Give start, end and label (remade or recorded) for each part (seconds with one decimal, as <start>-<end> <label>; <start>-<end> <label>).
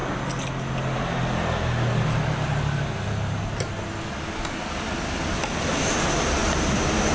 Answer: 0.0-7.1 recorded